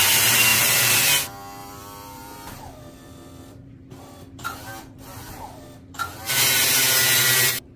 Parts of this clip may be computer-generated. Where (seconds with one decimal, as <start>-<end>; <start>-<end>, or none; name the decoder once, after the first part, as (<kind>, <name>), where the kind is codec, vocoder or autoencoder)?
0.5-1.1 (vocoder, BigVGAN v2); 1.6-6.3